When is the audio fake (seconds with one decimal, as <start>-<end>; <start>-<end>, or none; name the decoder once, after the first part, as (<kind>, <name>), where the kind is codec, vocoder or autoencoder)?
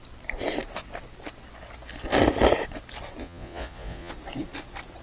3.2-4.1 (vocoder, Vocos)